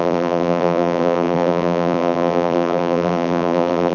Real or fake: fake